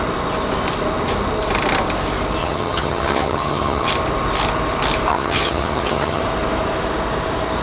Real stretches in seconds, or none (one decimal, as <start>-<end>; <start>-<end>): 0.0-2.4; 3.9-5.1; 6.2-7.6